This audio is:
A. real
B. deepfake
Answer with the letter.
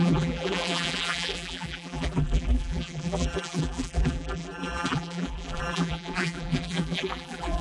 B